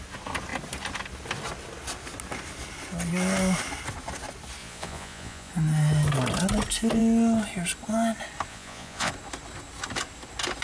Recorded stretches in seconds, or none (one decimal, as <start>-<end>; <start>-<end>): 0.0-4.6; 5.5-8.5; 9.1-10.6